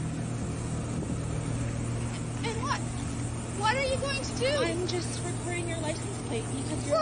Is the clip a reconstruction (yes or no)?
no